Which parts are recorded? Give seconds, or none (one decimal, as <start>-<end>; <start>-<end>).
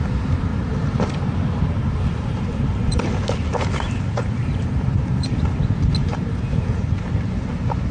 0.0-0.5; 3.1-4.4; 5.4-6.0; 6.9-7.9